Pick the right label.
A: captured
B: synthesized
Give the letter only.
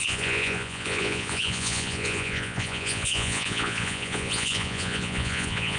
B